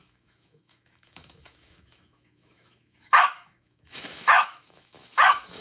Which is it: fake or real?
fake